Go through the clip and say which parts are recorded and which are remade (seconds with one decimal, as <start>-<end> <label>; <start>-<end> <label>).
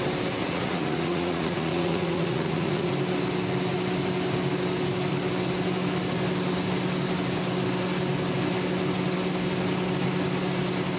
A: 0.0-0.4 recorded; 0.4-2.9 remade; 2.9-11.0 recorded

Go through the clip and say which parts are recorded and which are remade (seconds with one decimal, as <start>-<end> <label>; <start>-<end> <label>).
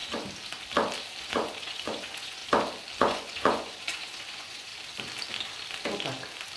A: 0.0-1.2 recorded; 1.2-2.4 remade; 2.4-3.0 recorded; 3.0-4.7 remade; 4.7-6.6 recorded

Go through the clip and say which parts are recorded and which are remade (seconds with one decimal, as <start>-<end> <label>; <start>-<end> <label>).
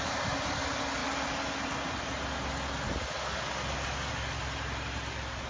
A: 0.0-5.5 recorded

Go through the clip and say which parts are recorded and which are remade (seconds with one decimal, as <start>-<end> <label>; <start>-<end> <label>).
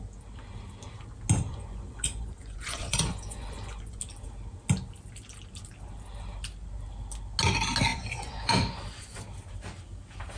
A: 0.0-1.5 recorded; 1.5-4.0 remade; 4.0-7.9 recorded; 7.9-9.2 remade; 9.2-10.4 recorded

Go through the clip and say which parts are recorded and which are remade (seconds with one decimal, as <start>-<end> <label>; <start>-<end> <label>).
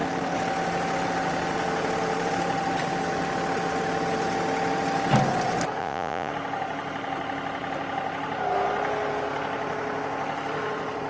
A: 0.0-5.8 recorded; 5.8-6.3 remade; 6.3-11.1 recorded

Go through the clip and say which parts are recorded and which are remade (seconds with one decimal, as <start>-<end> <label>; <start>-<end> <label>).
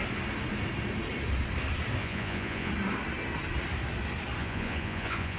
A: 0.0-2.0 recorded; 2.0-2.7 remade; 2.7-4.4 recorded; 4.4-5.4 remade